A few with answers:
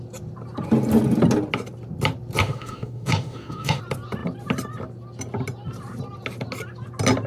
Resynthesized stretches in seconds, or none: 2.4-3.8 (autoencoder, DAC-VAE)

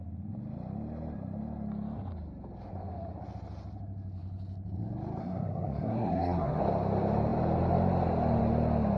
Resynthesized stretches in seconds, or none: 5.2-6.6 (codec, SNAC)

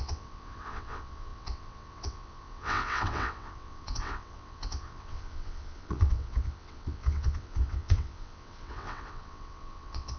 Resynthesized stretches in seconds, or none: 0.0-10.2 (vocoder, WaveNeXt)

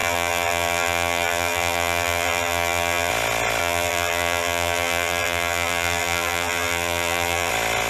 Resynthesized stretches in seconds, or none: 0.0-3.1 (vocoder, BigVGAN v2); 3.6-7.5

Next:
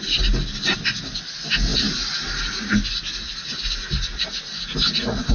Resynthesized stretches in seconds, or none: none

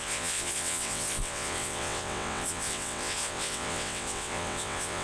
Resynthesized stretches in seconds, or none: 0.0-5.0 (vocoder, WaveNeXt)

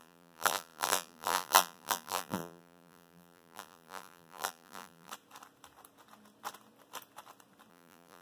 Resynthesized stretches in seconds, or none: 0.0-5.1 (vocoder, BigVGAN v2); 7.7-8.2